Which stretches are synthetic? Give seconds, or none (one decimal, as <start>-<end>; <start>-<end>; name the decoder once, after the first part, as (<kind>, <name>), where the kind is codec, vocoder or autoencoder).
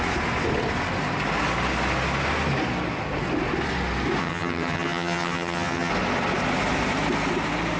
4.2-5.9 (vocoder, HiFi-GAN)